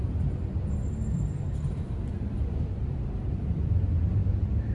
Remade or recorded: recorded